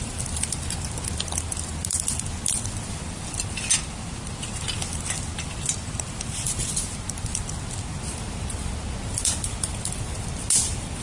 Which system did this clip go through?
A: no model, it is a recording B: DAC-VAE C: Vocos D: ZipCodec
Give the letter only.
A